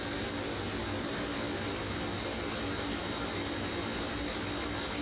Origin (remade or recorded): recorded